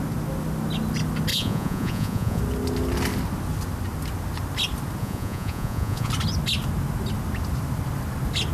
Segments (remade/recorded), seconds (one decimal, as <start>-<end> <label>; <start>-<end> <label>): 0.0-1.3 recorded; 1.3-2.4 remade; 2.4-5.0 recorded; 5.0-6.1 remade; 6.1-8.5 recorded